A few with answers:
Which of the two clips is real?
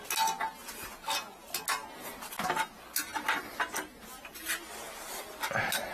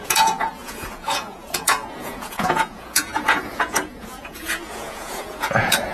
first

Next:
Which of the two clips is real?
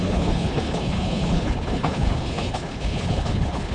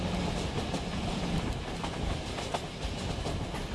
second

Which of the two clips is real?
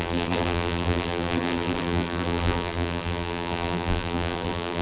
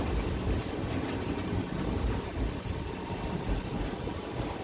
second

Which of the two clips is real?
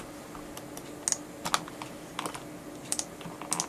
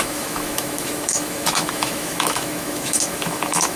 first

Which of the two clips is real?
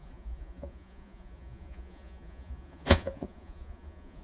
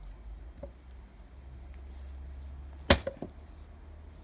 second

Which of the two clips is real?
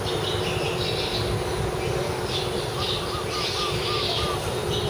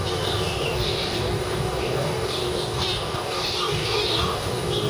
first